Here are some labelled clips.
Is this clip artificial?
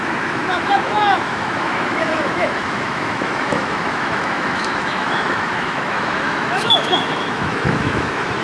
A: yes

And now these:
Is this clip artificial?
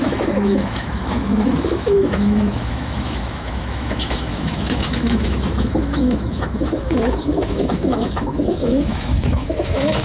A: yes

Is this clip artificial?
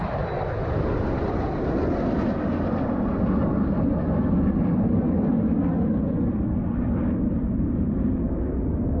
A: no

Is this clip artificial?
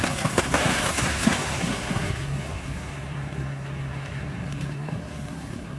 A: yes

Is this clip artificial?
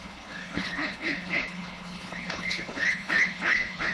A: yes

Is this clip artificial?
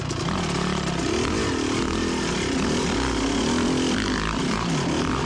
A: no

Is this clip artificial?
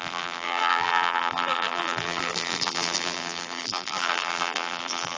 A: yes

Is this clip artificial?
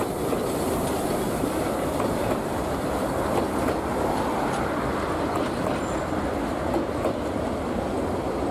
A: no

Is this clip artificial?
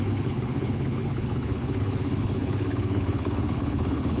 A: yes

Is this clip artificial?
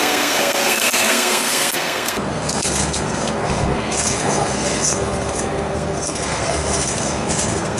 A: yes